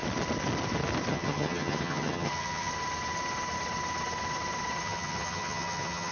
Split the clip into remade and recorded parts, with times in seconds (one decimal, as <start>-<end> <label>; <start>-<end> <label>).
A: 0.0-1.1 recorded; 1.1-2.7 remade; 2.7-4.8 recorded; 4.8-6.1 remade